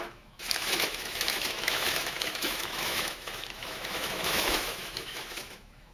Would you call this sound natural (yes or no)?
no